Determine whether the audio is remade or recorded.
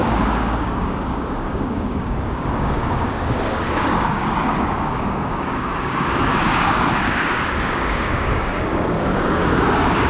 remade